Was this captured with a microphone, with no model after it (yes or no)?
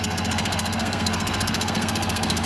no